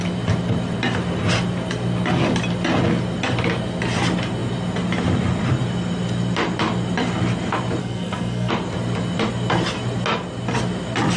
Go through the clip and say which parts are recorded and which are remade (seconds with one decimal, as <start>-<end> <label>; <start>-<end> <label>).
0.0-7.8 recorded; 7.8-8.5 remade; 8.5-11.2 recorded